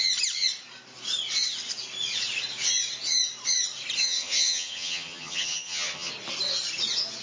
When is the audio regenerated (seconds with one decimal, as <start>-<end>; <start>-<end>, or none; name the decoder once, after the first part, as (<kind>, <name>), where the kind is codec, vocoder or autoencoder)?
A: 4.0-6.1 (vocoder, HiFi-GAN)